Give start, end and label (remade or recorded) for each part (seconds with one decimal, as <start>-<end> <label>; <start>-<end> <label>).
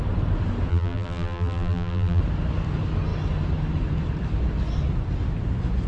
0.0-0.7 recorded; 0.7-2.2 remade; 2.2-5.9 recorded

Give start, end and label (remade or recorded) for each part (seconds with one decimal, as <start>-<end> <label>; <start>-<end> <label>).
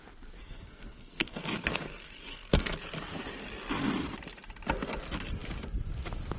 0.0-0.4 recorded; 0.4-2.7 remade; 2.7-6.4 recorded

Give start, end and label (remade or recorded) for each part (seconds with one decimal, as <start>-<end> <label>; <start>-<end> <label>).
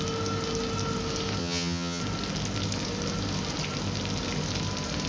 0.0-1.4 recorded; 1.4-2.0 remade; 2.0-5.1 recorded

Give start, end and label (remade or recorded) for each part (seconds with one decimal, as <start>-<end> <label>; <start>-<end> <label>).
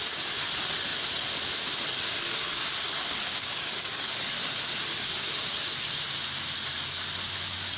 0.0-3.3 recorded; 3.3-4.1 remade; 4.1-7.8 recorded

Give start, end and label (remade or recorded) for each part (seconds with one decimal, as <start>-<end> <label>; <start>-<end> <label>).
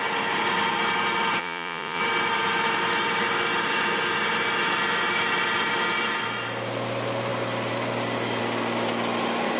0.0-1.4 recorded; 1.4-2.0 remade; 2.0-9.6 recorded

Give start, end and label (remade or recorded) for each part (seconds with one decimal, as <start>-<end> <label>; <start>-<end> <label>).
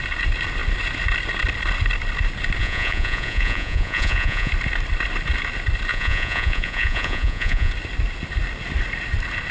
0.0-2.6 recorded; 2.6-4.5 remade; 4.5-5.9 recorded; 5.9-7.7 remade; 7.7-9.5 recorded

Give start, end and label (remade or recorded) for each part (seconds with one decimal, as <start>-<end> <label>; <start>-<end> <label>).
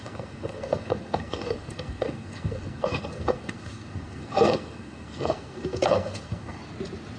0.0-6.6 remade; 6.6-7.2 recorded